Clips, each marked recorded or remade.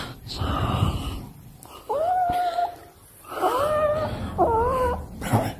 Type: recorded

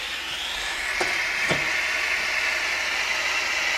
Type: recorded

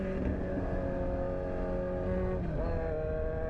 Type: recorded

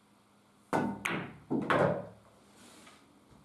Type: recorded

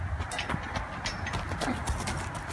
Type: recorded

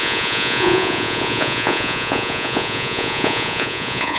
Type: remade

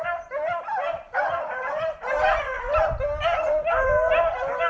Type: recorded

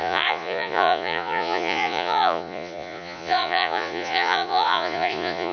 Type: remade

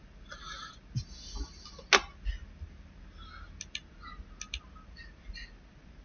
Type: recorded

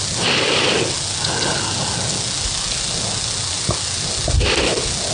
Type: recorded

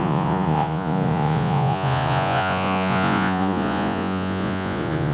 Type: remade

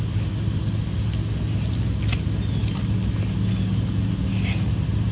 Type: recorded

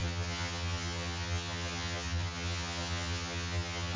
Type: remade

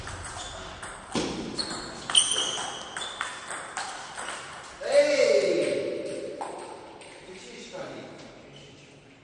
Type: recorded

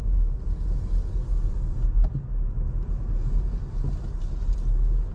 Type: recorded